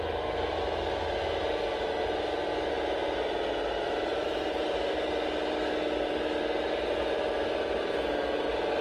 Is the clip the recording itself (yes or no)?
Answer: yes